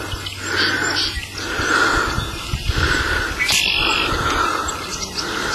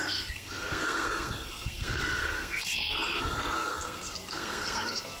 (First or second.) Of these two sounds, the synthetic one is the second